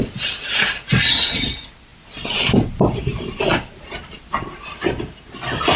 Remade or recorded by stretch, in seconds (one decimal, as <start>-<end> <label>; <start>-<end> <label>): 0.0-5.8 recorded